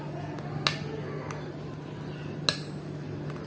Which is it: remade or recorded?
recorded